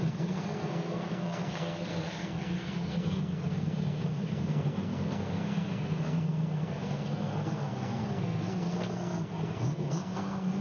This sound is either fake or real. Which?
fake